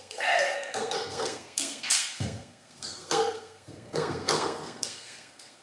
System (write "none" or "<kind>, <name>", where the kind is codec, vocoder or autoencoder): codec, SNAC